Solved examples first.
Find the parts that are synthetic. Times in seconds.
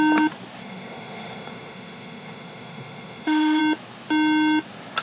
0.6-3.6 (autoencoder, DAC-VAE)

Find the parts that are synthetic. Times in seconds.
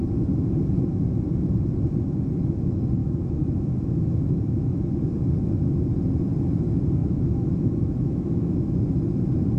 3.0-4.9 (autoencoder, DAC-VAE); 7.0-8.8